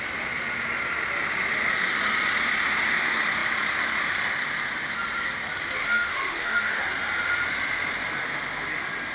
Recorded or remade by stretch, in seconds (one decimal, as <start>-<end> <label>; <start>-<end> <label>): 0.0-5.8 recorded; 5.8-6.8 remade; 6.8-9.1 recorded